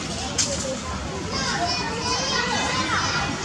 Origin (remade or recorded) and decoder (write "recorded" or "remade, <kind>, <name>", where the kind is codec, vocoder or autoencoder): recorded